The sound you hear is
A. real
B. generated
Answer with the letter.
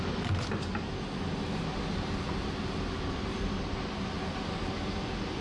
A